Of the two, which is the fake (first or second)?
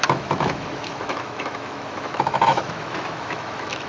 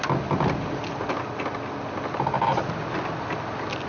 first